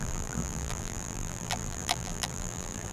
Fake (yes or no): yes